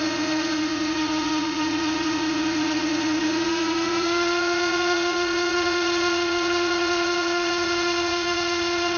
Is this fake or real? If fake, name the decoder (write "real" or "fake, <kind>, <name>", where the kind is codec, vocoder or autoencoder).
fake, vocoder, Vocos